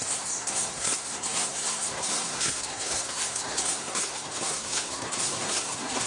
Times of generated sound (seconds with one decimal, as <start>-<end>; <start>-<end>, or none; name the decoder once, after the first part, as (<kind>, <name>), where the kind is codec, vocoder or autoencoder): 0.0-6.1 (codec, SNAC)